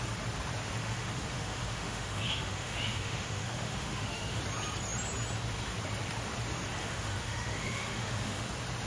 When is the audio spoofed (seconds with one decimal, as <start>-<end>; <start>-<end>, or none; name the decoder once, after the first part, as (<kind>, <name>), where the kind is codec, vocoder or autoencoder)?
0.8-4.4 (autoencoder, DAC-VAE); 6.8-8.5